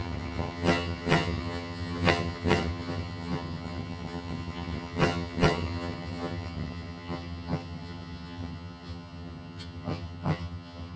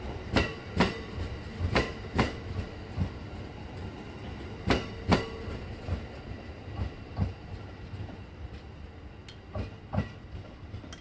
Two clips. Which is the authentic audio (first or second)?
second